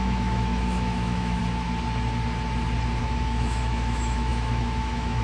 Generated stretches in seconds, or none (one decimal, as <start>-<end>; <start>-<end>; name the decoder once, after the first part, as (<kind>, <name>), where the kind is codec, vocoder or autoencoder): 0.0-1.4 (autoencoder, DAC-VAE); 3.0-5.2